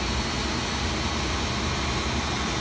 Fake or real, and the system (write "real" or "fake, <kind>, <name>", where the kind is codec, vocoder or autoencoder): real